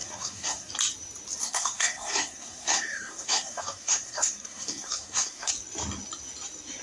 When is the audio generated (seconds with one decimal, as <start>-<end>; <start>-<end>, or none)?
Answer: 0.0-0.7; 1.4-5.5